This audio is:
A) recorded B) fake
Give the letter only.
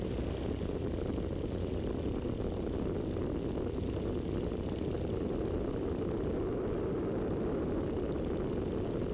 A